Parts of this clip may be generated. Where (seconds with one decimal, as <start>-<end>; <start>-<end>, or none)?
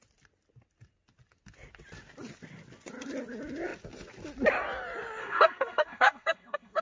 5.2-6.8